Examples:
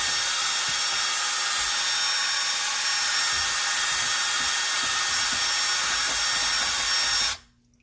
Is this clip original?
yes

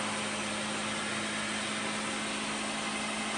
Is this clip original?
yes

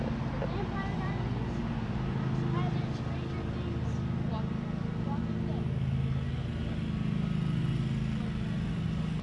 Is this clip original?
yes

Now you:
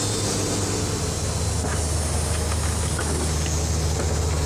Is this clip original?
yes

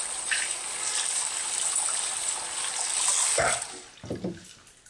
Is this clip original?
yes